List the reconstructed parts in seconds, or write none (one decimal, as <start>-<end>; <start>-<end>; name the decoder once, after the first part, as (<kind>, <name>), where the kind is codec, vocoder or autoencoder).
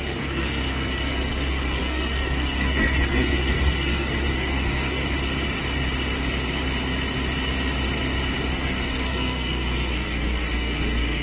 0.0-5.0 (codec, SNAC); 8.5-11.2